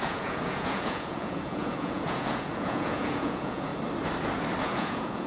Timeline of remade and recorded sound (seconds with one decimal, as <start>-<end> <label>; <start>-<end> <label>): 0.0-3.7 remade; 3.7-4.6 recorded; 4.6-5.3 remade